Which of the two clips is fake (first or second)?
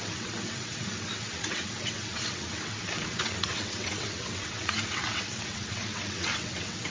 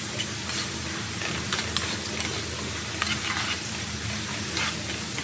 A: first